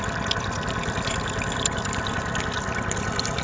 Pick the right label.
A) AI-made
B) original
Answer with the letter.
B